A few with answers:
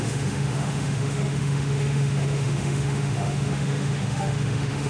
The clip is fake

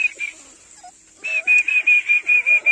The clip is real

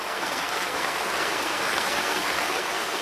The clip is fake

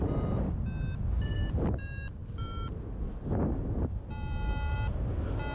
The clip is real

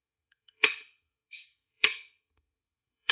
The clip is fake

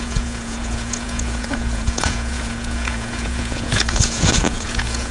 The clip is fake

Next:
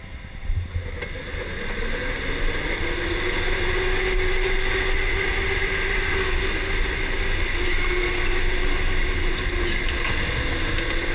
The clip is real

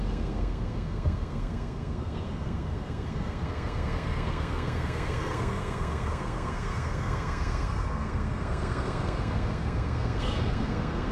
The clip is fake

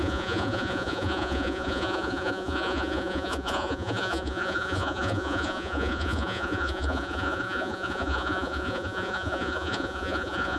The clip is fake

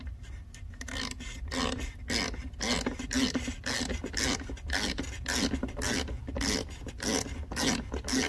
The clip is real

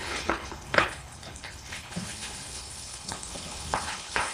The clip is fake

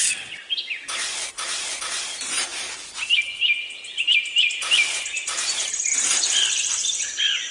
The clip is real